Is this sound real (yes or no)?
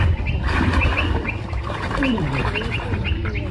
yes